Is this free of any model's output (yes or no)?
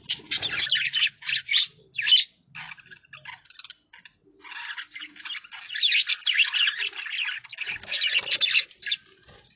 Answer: yes